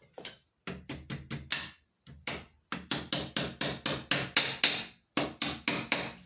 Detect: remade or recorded recorded